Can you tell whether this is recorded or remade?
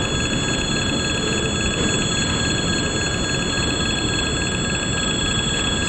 recorded